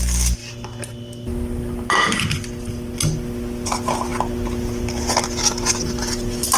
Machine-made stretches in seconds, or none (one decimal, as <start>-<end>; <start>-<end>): none